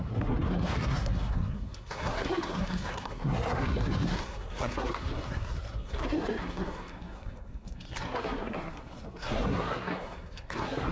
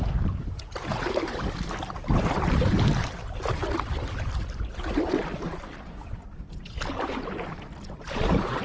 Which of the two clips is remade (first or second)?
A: first